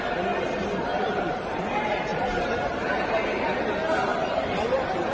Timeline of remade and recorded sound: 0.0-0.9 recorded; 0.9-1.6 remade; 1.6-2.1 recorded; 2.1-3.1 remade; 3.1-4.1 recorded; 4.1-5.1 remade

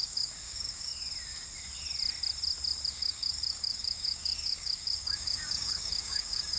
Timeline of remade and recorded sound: 0.0-0.9 remade; 0.9-2.9 recorded; 2.9-6.6 remade